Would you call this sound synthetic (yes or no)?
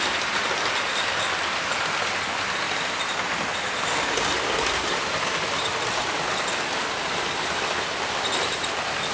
no